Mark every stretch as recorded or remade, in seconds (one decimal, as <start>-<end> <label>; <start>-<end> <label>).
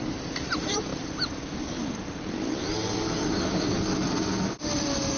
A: 0.0-0.9 recorded; 0.9-1.6 remade; 1.6-5.2 recorded